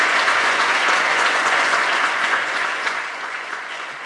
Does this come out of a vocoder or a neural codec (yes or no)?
yes